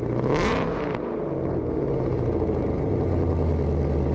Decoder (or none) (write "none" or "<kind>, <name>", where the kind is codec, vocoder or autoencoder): none